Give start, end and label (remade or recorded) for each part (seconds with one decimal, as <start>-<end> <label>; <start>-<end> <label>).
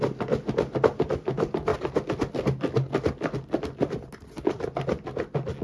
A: 0.0-5.6 recorded